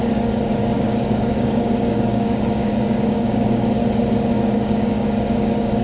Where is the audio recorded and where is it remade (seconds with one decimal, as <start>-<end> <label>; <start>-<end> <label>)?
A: 0.0-3.8 remade; 3.8-4.3 recorded; 4.3-5.8 remade